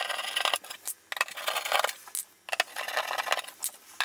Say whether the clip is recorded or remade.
recorded